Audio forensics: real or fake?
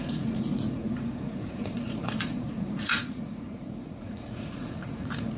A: fake